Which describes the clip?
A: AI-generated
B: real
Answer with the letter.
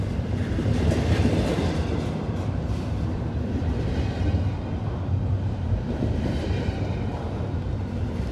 A